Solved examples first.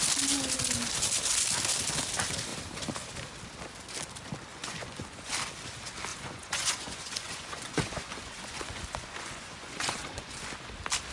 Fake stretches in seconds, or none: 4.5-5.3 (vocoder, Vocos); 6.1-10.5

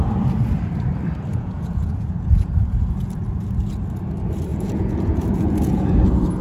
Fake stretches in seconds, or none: 1.3-3.2 (vocoder, Vocos); 4.5-5.9

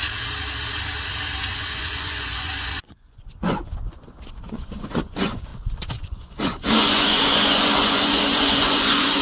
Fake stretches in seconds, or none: 1.5-5.5 (vocoder, Vocos); 6.0-9.2

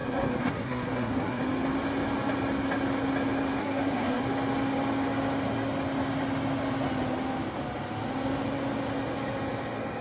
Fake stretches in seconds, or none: 0.0-1.4 (codec, SNAC); 3.6-4.2